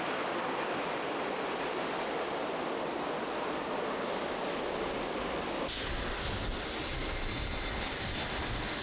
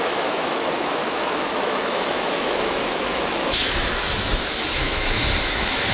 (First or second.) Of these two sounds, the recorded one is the first